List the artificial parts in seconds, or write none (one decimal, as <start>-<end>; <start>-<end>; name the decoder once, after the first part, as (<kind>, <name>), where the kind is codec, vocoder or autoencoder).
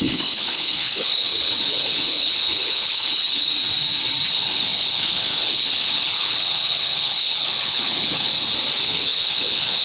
0.0-3.5 (codec, HILCodec); 4.3-8.3; 8.8-9.8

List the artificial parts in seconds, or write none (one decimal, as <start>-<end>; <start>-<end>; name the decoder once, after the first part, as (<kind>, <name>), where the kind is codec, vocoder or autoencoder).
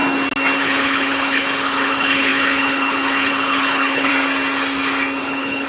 0.6-4.1 (codec, HILCodec); 5.2-5.7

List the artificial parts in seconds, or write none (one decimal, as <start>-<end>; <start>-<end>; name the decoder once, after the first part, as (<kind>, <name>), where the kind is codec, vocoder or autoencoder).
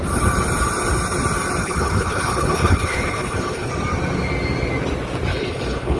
1.6-3.7 (codec, HILCodec); 5.3-6.0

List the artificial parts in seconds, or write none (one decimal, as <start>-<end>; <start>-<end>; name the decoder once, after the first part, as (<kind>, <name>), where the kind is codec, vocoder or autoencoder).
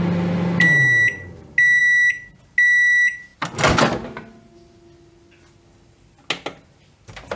none